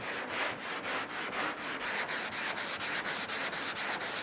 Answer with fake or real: real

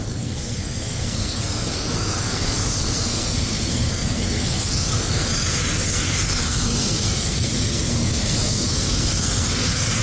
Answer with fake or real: fake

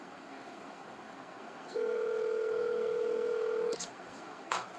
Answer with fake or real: fake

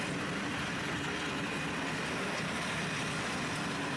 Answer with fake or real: real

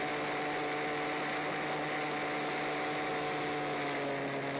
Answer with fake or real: real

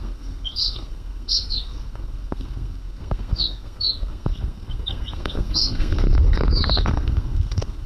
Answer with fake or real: fake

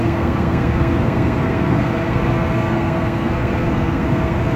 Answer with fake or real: fake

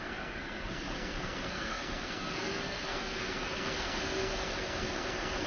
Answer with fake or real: fake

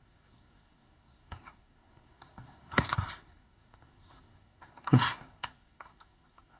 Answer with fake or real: fake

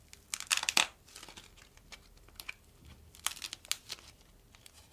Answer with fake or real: real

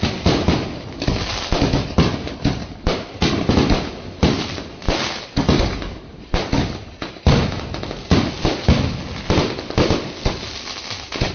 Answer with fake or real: real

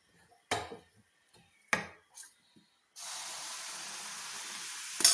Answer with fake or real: real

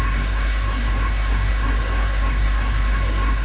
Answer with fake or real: fake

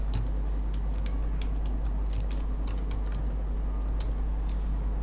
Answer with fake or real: real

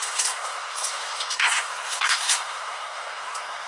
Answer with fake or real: fake